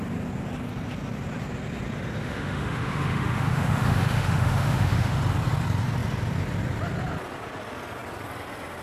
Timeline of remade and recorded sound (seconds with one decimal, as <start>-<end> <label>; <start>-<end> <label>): 0.0-2.2 recorded; 2.2-5.2 remade; 5.2-8.8 recorded